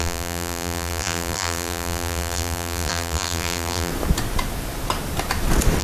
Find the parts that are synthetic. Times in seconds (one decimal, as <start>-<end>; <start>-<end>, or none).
0.0-3.9